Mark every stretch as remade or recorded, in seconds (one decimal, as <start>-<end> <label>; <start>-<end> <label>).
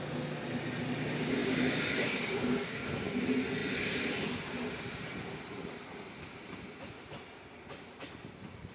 0.0-1.4 recorded; 1.4-2.9 remade; 2.9-8.7 recorded